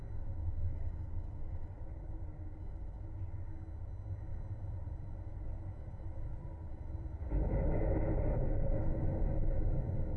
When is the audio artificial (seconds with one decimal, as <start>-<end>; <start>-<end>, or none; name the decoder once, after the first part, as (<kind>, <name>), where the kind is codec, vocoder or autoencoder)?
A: 0.7-2.6 (vocoder, BigVGAN v2); 4.3-7.7